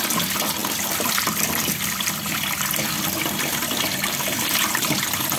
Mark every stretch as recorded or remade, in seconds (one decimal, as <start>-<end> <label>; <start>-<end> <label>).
0.0-5.4 recorded